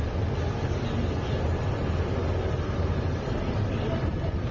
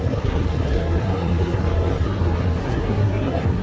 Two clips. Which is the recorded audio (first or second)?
first